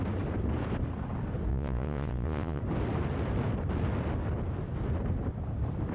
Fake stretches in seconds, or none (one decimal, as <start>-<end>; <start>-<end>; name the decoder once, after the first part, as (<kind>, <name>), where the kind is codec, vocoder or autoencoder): 1.5-2.6 (vocoder, Vocos)